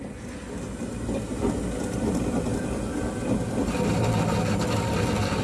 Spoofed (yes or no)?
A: no